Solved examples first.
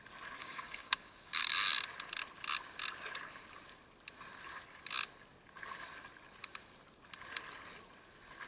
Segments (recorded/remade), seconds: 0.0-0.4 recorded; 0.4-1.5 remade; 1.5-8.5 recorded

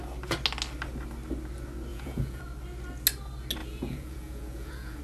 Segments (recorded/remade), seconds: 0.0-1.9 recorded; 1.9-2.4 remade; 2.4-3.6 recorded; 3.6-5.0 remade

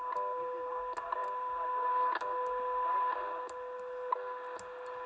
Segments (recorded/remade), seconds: 0.0-1.2 recorded; 1.2-1.9 remade; 1.9-5.1 recorded

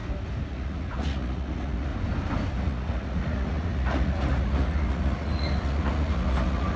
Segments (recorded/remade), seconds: 0.0-0.5 recorded; 0.5-1.9 remade; 1.9-2.6 recorded; 2.6-6.8 remade

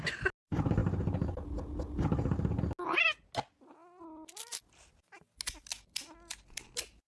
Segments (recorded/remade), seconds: 0.0-7.1 recorded

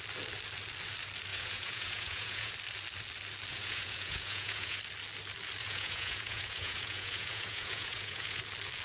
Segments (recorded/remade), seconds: 0.0-1.3 recorded; 1.3-2.5 remade; 2.5-3.5 recorded; 3.5-4.8 remade; 4.8-5.6 recorded; 5.6-8.4 remade; 8.4-8.8 recorded

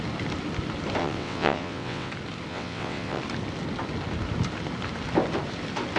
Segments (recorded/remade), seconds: 0.0-1.0 recorded; 1.0-2.1 remade; 2.1-2.5 recorded; 2.5-3.2 remade; 3.2-6.0 recorded